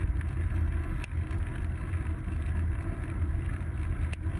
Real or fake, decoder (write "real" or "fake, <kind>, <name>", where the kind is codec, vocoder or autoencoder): real